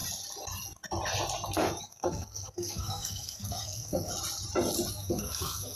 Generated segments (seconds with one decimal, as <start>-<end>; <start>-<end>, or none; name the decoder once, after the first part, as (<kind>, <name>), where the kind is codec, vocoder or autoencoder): 1.8-4.1 (codec, SNAC); 4.9-5.8